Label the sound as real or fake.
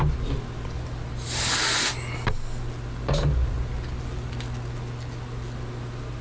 real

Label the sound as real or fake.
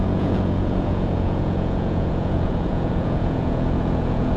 fake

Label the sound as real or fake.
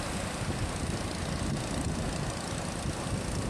real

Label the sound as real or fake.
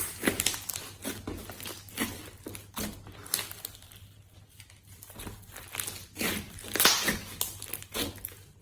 real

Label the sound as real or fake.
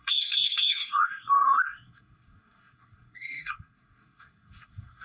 fake